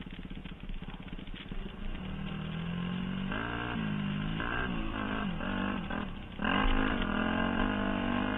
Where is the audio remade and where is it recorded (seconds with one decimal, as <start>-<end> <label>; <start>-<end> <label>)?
0.0-0.4 recorded; 0.4-1.2 remade; 1.2-4.3 recorded; 4.3-5.2 remade; 5.2-8.4 recorded